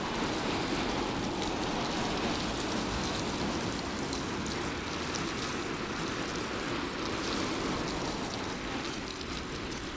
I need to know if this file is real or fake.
real